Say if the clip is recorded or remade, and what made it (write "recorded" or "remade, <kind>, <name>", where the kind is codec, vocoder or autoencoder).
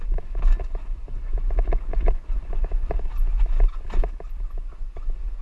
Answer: recorded